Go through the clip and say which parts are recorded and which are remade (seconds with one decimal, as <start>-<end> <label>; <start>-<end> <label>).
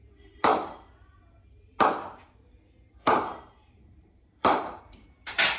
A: 0.0-0.5 remade; 0.5-2.9 recorded; 2.9-5.6 remade